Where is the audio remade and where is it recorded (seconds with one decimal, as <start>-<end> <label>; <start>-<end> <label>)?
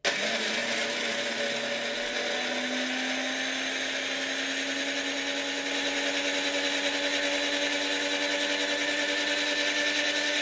0.0-10.4 recorded